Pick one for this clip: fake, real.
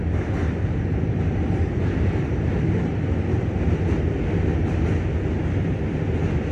real